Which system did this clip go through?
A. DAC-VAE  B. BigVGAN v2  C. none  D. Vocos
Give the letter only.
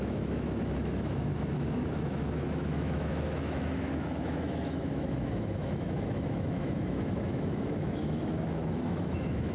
A